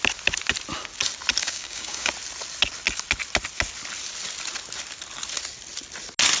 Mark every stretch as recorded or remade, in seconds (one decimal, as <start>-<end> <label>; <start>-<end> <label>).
0.0-1.4 recorded; 1.4-2.1 remade; 2.1-6.4 recorded